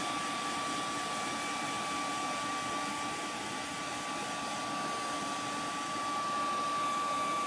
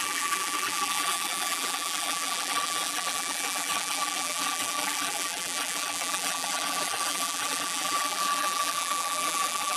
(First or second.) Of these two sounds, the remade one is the second